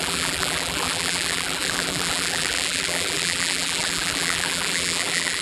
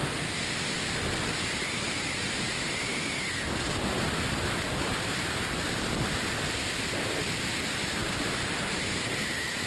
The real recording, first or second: second